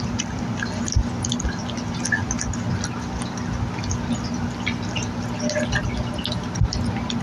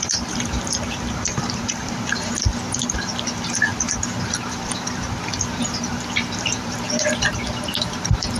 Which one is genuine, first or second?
first